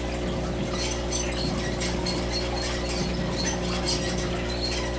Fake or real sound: real